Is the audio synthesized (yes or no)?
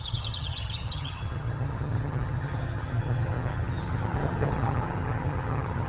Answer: yes